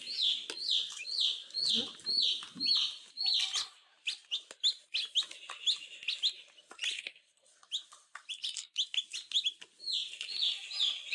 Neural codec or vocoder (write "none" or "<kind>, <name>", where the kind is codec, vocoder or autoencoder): none